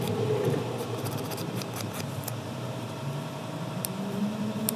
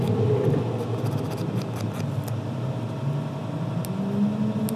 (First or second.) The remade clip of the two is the first